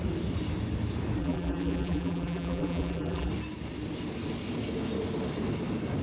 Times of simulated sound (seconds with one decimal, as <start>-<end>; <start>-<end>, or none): 1.2-3.3